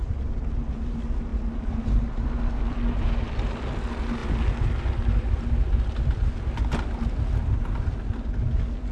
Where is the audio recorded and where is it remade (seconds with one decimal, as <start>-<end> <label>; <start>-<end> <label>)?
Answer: 0.0-8.9 recorded